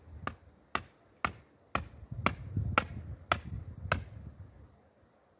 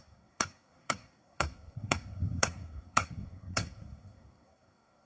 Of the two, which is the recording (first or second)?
first